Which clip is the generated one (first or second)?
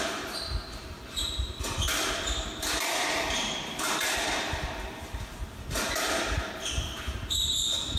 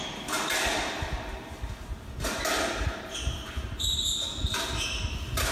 first